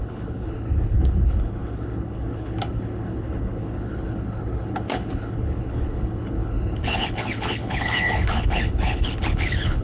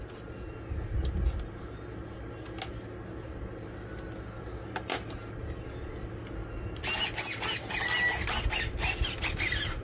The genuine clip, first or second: second